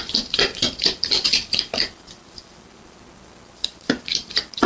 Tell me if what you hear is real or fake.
fake